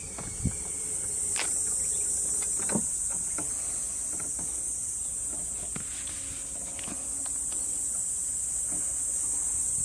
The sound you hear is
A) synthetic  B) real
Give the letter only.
B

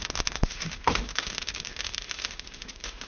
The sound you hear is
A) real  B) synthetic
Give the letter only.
B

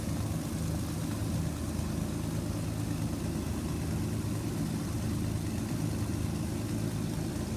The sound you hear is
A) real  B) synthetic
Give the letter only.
A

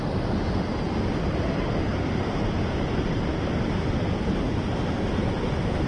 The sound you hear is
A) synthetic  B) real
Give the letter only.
B